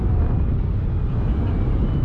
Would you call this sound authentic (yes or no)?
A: yes